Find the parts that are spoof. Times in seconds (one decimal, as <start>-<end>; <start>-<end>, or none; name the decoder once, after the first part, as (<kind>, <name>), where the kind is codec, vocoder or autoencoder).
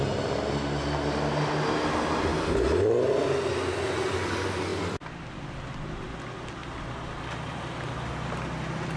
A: 4.7-5.2 (vocoder, BigVGAN v2); 6.6-7.6